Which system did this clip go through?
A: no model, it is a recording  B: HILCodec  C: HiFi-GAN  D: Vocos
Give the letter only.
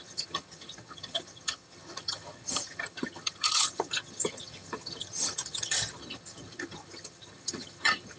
C